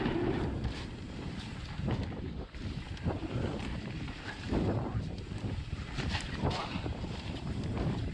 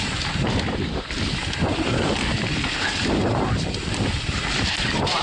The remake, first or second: first